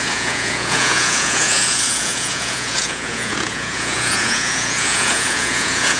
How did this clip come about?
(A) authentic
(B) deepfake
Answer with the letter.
B